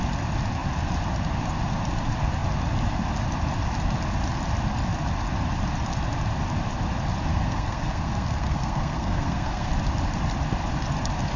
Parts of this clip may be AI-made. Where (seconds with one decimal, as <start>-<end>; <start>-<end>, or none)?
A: 7.3-9.7